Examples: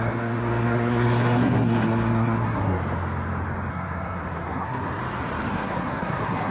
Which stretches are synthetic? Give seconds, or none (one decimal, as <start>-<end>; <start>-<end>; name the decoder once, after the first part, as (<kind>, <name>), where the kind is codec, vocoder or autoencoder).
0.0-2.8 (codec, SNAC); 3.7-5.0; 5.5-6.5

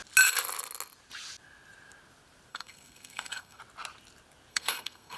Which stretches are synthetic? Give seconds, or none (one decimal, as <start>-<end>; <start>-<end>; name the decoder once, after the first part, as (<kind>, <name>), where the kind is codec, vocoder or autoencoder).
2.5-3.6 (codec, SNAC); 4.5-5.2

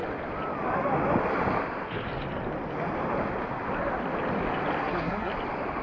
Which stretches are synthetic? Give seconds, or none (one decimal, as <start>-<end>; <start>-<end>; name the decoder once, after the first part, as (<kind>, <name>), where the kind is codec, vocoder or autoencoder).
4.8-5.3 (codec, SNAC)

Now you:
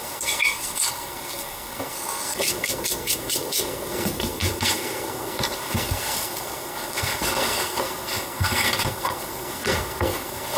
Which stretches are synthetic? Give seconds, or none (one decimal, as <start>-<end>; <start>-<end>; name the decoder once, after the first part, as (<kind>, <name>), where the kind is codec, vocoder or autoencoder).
0.0-10.6 (codec, SNAC)